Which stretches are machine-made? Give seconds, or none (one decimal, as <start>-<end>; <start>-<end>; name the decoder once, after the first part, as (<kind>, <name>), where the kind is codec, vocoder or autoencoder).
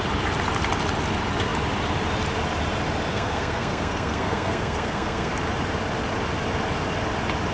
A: 3.1-5.3 (codec, SNAC)